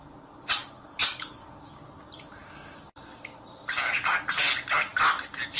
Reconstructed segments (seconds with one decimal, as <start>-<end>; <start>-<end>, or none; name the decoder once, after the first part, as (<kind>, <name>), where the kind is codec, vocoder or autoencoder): 1.0-1.5 (vocoder, BigVGAN v2); 2.4-4.5; 4.9-5.6

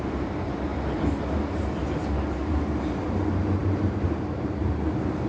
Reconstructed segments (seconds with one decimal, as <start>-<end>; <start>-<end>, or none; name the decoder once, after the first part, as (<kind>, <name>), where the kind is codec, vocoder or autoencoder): 3.6-5.3 (vocoder, BigVGAN v2)